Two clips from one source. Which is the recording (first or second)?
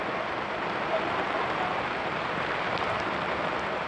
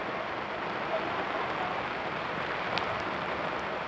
second